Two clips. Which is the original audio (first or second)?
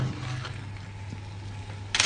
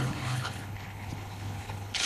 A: first